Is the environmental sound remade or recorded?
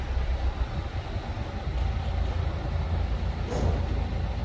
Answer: recorded